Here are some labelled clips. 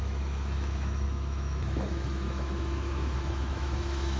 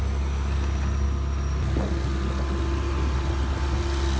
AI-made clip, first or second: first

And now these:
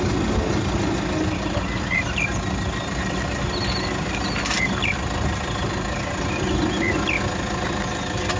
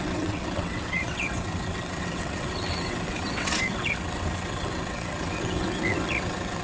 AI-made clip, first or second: second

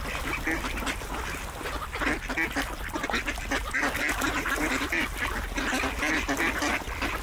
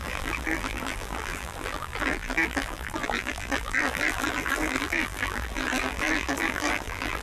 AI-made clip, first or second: second